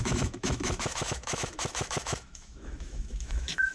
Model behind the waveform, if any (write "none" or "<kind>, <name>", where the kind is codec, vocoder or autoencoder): autoencoder, DAC-VAE